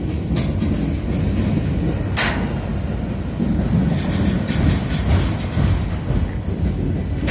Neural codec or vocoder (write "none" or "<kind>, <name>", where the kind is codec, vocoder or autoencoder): none